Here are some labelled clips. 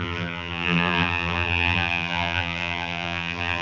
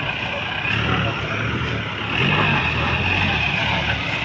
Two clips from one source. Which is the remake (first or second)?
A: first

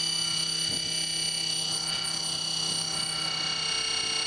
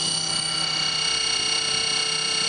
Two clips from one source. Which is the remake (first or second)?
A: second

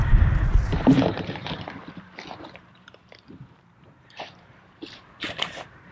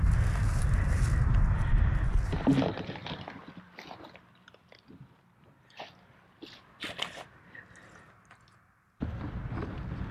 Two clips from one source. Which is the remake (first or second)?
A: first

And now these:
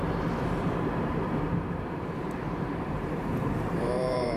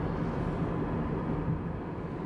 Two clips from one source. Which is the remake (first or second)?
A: first